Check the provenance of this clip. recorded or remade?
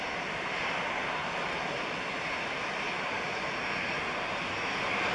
recorded